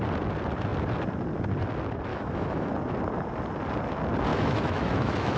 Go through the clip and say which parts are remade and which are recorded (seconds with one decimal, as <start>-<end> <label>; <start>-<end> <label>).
0.0-2.1 recorded; 2.1-2.7 remade; 2.7-4.3 recorded; 4.3-5.4 remade